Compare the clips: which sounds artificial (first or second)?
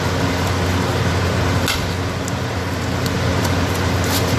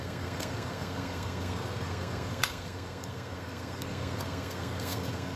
second